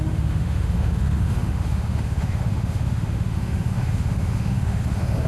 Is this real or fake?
fake